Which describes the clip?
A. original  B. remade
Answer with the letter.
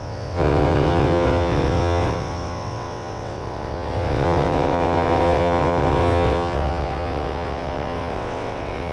B